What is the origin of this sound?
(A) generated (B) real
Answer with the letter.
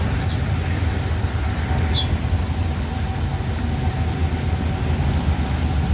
B